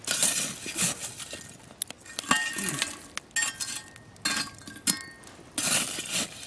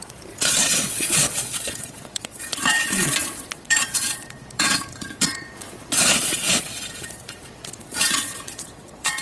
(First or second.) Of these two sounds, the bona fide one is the first